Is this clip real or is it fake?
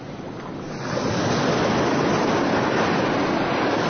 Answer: real